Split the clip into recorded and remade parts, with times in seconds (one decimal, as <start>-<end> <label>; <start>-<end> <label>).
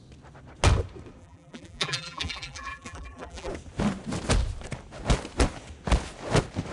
0.0-1.2 recorded; 1.2-3.5 remade; 3.5-6.7 recorded